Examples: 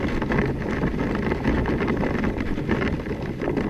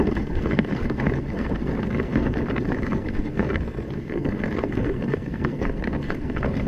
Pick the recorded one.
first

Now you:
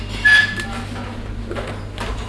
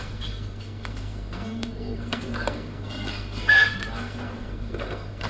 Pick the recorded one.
first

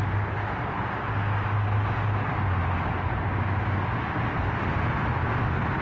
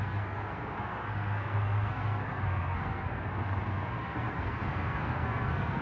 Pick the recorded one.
first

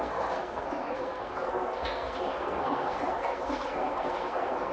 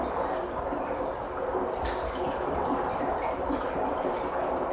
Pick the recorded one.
second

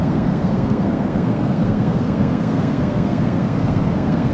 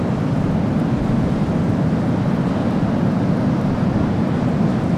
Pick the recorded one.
second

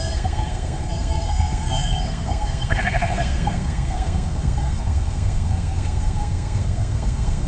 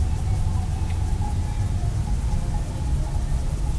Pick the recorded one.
second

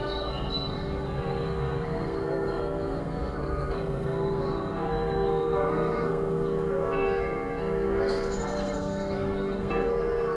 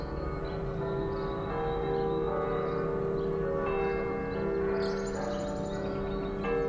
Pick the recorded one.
second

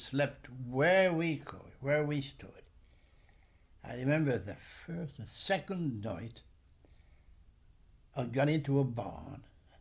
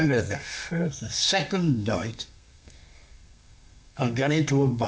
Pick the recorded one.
first